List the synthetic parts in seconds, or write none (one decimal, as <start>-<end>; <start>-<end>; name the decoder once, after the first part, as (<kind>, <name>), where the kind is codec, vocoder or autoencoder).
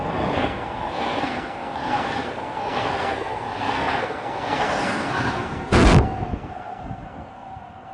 0.0-7.9 (codec, SNAC)